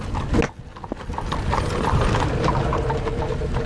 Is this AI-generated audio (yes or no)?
no